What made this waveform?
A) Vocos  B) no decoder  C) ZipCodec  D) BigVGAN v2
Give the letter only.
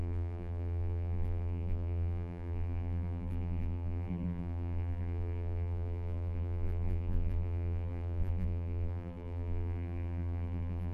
D